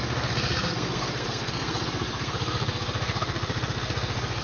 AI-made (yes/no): yes